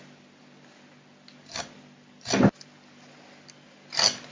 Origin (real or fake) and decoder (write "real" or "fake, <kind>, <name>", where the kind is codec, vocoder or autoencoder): real